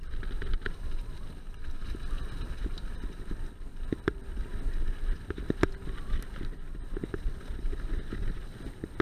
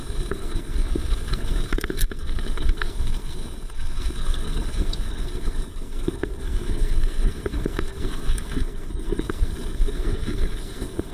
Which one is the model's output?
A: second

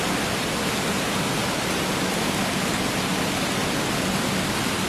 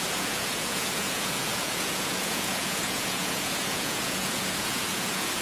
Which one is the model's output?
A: second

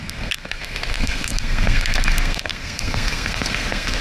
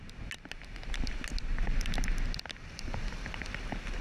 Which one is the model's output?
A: first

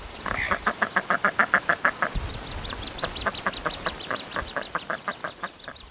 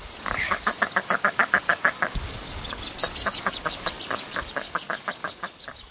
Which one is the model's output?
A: second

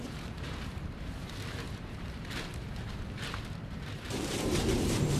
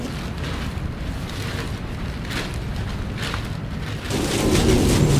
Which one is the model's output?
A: first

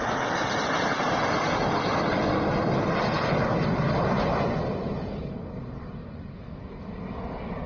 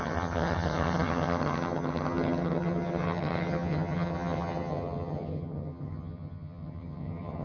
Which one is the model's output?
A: second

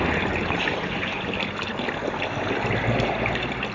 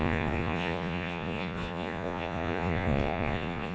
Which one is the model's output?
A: second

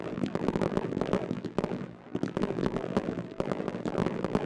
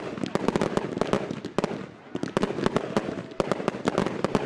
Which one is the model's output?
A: first